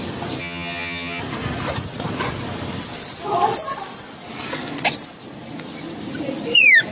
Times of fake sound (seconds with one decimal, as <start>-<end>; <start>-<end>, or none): 0.4-1.2